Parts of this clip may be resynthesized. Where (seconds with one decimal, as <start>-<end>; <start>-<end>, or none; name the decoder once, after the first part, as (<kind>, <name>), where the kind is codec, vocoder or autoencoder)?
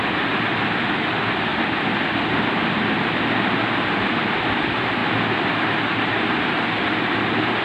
0.0-1.5 (vocoder, BigVGAN v2); 4.6-5.0; 5.5-7.6